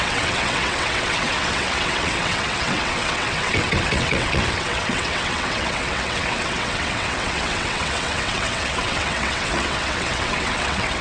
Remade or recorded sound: remade